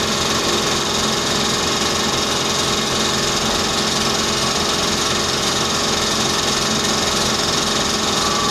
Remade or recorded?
recorded